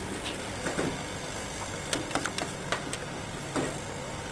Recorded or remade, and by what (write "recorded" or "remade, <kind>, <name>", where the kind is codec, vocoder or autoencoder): recorded